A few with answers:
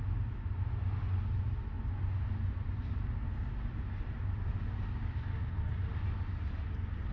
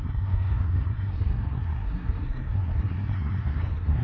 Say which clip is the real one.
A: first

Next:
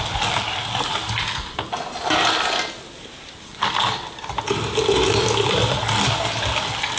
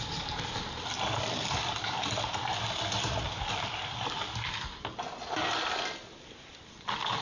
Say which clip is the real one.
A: first